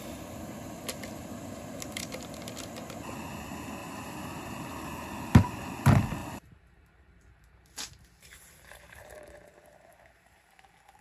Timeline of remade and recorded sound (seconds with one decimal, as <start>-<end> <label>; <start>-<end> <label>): 0.0-3.8 recorded; 3.8-4.7 remade; 4.7-6.2 recorded; 6.2-10.5 remade; 10.5-11.0 recorded